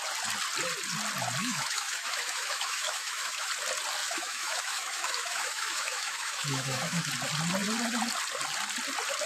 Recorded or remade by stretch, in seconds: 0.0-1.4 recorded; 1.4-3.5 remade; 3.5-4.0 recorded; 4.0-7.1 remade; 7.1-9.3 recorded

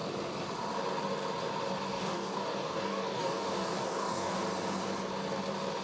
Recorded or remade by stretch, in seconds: 0.0-1.9 recorded; 1.9-4.4 remade; 4.4-5.8 recorded

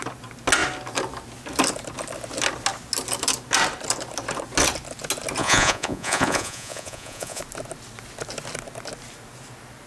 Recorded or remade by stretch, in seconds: 0.0-5.4 recorded; 5.4-7.4 remade; 7.4-9.9 recorded